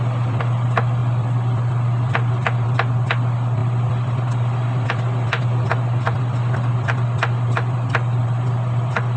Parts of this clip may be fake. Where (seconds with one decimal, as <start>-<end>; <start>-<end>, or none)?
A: none